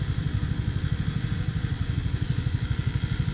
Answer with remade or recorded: recorded